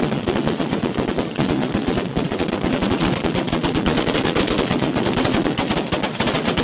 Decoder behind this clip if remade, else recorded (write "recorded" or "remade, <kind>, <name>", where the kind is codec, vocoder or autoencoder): remade, vocoder, WaveNeXt